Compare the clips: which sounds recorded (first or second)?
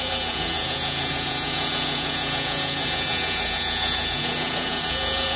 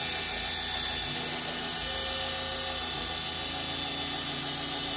second